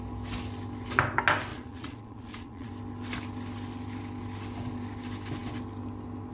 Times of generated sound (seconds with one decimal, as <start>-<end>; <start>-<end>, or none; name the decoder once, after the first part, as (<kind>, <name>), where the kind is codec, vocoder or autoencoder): 1.5-2.7 (vocoder, Vocos)